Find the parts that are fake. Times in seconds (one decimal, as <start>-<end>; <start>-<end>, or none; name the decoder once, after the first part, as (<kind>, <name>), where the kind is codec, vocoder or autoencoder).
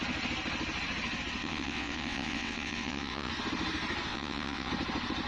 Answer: 1.4-3.3 (vocoder, WaveNeXt); 4.1-4.7